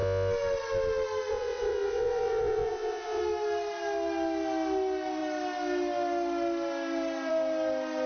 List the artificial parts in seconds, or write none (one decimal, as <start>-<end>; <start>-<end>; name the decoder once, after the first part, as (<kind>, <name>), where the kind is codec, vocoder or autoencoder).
1.3-3.2 (vocoder, WaveNeXt)